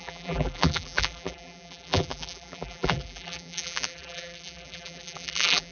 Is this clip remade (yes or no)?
yes